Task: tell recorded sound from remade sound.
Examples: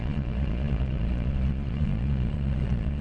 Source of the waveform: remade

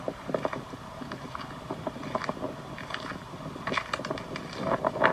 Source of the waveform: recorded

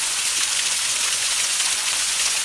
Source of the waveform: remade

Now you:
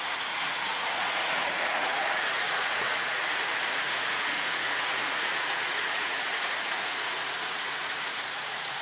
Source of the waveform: remade